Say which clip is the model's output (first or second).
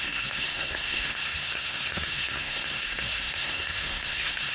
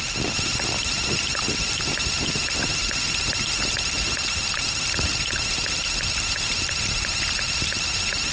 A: first